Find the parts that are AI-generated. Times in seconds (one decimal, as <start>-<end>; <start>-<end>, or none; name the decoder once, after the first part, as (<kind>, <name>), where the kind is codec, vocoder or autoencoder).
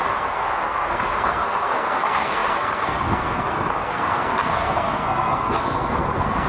0.0-6.5 (codec, SNAC)